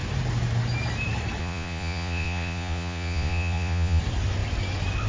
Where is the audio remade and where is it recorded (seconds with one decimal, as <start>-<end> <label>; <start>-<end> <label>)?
0.0-1.4 recorded; 1.4-4.0 remade; 4.0-5.1 recorded